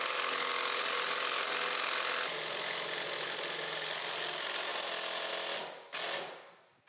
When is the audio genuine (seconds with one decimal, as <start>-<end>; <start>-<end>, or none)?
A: 0.0-6.9

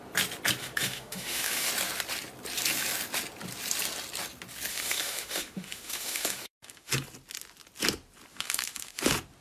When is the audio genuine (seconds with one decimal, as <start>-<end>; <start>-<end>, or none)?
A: 0.0-0.6; 1.7-4.7; 6.9-8.3; 9.0-9.4

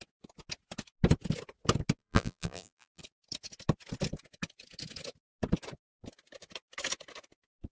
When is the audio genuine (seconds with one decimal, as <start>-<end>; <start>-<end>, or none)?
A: 0.0-2.0; 3.0-7.7

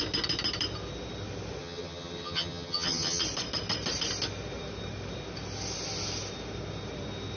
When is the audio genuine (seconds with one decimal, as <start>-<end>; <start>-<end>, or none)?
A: 0.0-1.6; 3.2-7.4

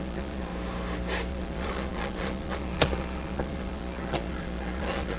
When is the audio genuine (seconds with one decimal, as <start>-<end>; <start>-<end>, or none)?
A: 0.5-1.3

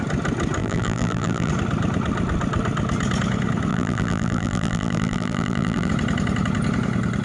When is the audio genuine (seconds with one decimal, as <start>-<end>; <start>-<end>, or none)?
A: 0.0-0.6; 1.5-3.7; 5.9-7.2

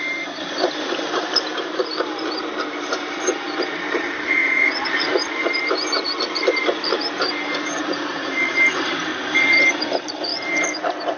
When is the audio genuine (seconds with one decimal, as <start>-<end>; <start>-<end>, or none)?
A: 9.1-9.7